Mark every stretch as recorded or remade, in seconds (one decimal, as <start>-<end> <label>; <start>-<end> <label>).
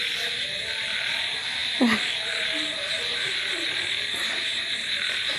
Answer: 0.0-5.4 recorded